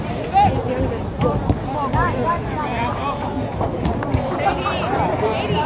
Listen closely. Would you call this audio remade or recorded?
recorded